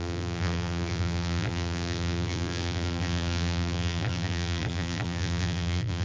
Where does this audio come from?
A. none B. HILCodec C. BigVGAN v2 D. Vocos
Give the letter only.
C